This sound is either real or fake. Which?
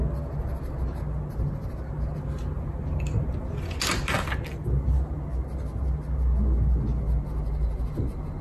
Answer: real